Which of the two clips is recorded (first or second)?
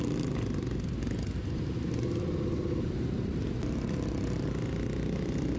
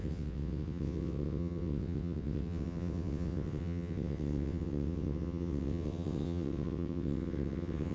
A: first